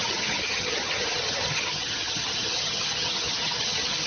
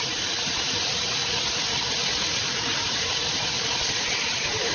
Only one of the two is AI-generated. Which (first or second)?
first